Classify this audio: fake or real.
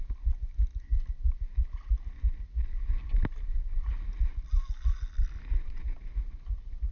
real